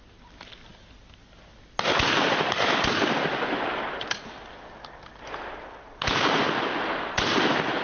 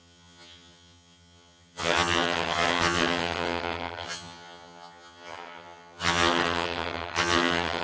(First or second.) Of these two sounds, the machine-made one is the second